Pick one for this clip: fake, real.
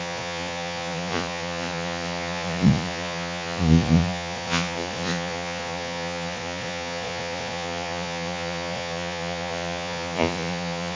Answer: fake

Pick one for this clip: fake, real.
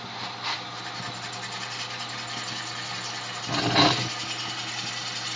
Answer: real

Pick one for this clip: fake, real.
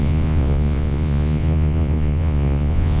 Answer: fake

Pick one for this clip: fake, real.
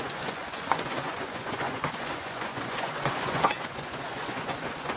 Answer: fake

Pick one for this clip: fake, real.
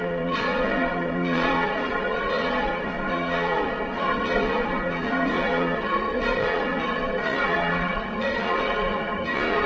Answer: fake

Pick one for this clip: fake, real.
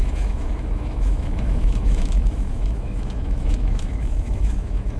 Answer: fake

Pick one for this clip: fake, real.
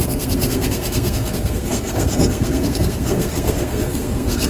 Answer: fake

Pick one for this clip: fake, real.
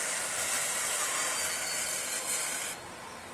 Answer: real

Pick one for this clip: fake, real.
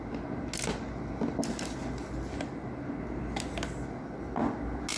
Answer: real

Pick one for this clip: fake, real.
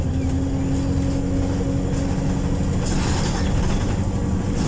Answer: real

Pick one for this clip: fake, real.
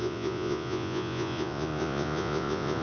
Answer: fake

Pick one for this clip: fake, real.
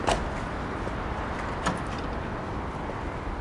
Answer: real